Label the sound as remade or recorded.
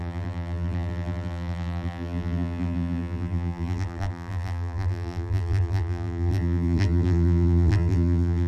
remade